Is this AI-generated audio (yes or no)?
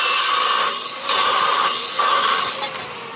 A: no